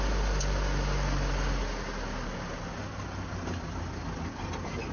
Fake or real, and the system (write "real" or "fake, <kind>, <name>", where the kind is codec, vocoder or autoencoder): real